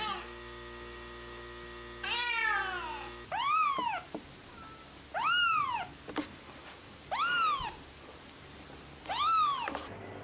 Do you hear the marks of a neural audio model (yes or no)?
no